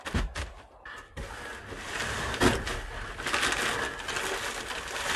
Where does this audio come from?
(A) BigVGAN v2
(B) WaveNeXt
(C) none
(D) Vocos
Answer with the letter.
C